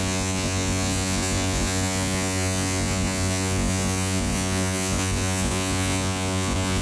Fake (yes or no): yes